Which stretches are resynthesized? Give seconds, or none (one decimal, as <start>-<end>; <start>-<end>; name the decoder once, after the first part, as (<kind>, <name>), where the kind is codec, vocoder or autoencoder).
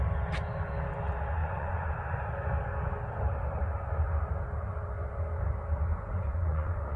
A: 1.4-1.9 (vocoder, Vocos); 5.9-7.0